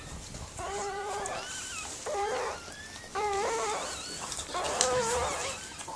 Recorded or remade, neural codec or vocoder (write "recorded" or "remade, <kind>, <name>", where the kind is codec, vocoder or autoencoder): remade, vocoder, BigVGAN v2